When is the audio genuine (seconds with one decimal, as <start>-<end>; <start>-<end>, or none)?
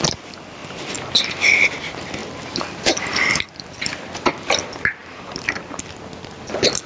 0.0-6.9